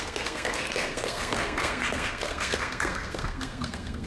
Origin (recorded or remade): remade